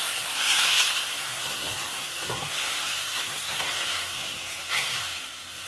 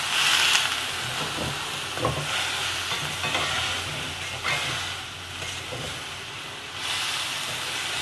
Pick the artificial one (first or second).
first